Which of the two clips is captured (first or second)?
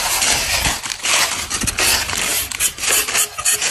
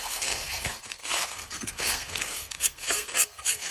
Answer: first